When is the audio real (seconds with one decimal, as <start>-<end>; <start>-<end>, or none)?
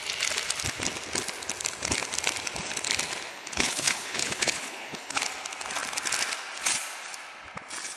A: 0.0-3.3; 5.2-8.0